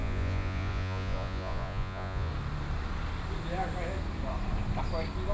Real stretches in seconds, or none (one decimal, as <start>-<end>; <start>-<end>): 2.3-5.3